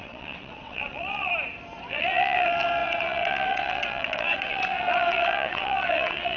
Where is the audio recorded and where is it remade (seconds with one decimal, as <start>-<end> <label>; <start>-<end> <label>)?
0.0-1.3 remade; 1.3-1.9 recorded; 1.9-6.4 remade